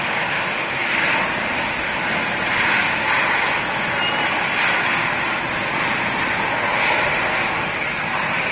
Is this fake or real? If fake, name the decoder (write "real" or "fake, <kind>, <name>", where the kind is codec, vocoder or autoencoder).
real